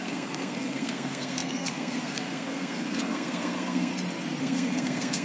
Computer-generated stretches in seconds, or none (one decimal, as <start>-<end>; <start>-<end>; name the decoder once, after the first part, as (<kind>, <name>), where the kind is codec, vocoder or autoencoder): 0.0-3.9 (codec, SNAC); 4.4-5.2

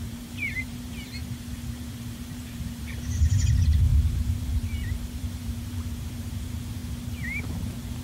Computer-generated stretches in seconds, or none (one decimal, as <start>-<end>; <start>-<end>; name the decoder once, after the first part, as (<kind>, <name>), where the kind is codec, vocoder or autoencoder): 0.0-6.8 (vocoder, BigVGAN v2)

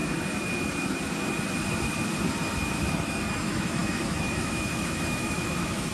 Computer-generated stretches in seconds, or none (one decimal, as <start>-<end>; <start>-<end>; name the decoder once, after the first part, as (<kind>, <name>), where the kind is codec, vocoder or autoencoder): 2.9-5.9 (autoencoder, DAC-VAE)

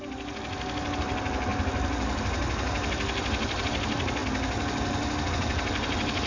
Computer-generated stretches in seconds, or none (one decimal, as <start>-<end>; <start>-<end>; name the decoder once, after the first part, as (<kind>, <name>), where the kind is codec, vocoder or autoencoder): none

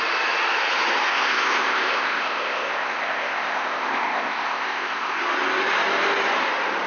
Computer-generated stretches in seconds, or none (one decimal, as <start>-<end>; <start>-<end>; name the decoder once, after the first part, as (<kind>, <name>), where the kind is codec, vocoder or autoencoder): 1.1-5.2 (codec, ZipCodec)

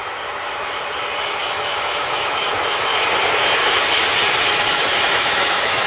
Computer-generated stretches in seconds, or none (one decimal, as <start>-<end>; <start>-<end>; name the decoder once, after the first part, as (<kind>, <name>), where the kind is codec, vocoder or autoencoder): 1.4-2.9 (autoencoder, DAC-VAE); 4.7-5.9